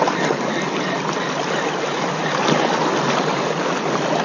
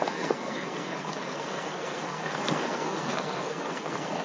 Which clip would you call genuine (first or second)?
first